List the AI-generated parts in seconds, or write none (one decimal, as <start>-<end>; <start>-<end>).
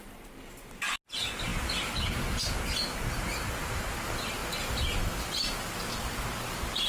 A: none